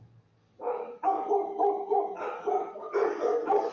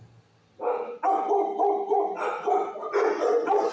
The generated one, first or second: first